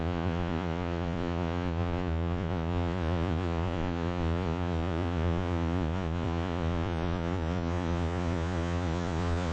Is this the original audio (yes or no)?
no